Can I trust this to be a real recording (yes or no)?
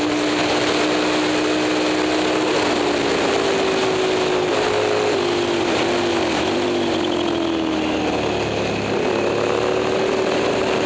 yes